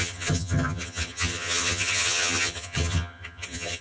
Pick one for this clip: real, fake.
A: fake